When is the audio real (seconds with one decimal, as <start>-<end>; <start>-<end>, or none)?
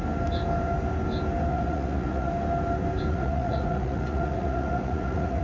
0.0-1.5; 2.3-3.1